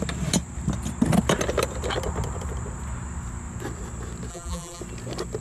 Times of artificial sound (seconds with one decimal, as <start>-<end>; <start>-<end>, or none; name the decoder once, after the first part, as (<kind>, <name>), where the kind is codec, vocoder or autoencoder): 4.3-4.8 (vocoder, BigVGAN v2)